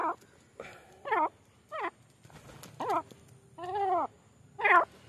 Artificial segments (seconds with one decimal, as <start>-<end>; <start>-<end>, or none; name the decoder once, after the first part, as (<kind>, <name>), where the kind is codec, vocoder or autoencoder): none